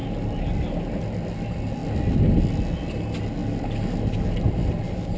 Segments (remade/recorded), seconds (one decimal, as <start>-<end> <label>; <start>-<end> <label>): 0.0-5.2 recorded

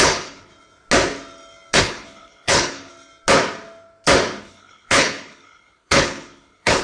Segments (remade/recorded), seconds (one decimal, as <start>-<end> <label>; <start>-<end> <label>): 0.0-0.5 remade; 0.5-1.8 recorded; 1.8-2.9 remade; 2.9-4.4 recorded; 4.4-6.8 remade

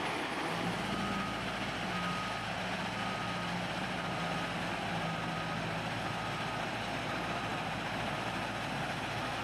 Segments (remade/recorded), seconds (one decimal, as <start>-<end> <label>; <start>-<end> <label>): 0.0-9.4 recorded